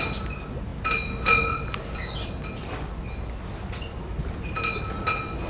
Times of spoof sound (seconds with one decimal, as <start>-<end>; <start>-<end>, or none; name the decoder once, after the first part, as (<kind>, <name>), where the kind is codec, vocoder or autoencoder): none